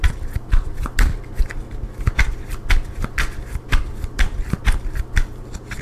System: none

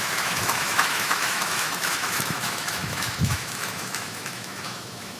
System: autoencoder, DAC-VAE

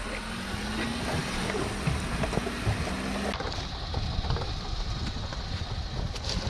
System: none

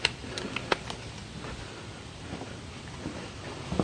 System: none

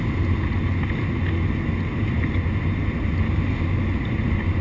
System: none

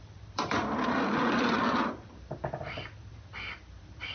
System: vocoder, BigVGAN v2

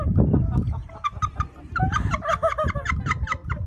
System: none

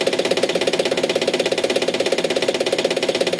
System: none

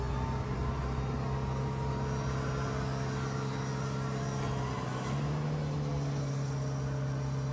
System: none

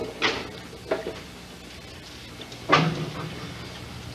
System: none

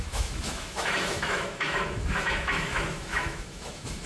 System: autoencoder, DAC-VAE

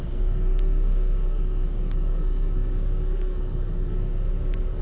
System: codec, SNAC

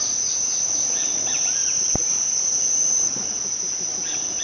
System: vocoder, BigVGAN v2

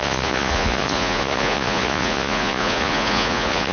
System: vocoder, Vocos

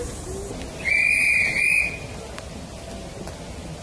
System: none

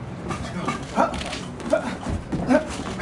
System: vocoder, BigVGAN v2